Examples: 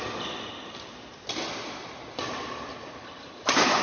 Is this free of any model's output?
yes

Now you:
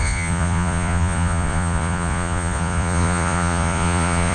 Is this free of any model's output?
no